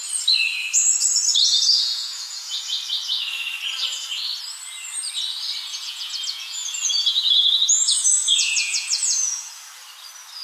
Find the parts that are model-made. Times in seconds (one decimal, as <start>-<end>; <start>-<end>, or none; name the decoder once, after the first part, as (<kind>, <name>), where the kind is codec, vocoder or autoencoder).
1.5-2.6 (vocoder, Vocos); 5.7-9.5